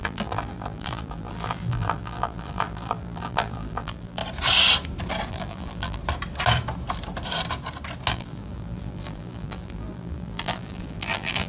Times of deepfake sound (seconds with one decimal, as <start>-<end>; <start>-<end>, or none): 0.0-4.2; 5.3-6.0; 8.1-11.5